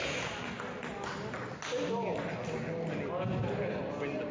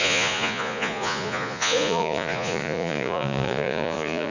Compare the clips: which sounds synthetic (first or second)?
second